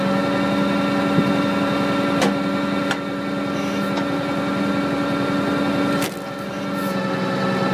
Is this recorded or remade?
recorded